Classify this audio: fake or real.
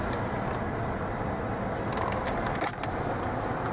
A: real